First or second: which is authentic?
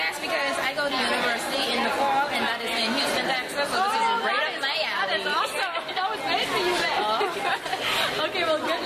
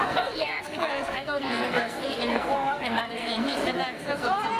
first